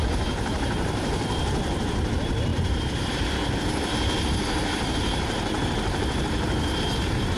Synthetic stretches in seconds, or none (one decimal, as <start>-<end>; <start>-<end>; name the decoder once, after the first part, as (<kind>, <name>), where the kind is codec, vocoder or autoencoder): 0.0-7.4 (vocoder, BigVGAN v2)